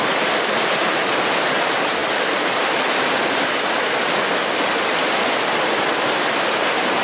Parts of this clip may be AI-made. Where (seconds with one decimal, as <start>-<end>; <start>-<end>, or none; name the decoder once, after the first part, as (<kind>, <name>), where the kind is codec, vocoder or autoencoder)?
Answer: none